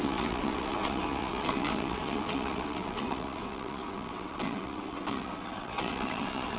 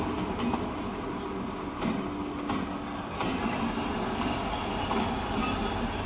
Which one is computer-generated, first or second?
first